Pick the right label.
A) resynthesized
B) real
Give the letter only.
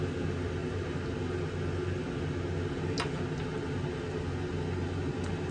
B